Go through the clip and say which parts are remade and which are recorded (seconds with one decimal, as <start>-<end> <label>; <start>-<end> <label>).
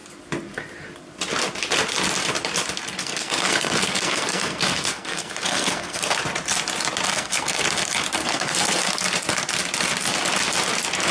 0.0-3.0 recorded; 3.0-6.2 remade; 6.2-7.1 recorded; 7.1-7.6 remade; 7.6-8.2 recorded; 8.2-8.9 remade; 8.9-11.1 recorded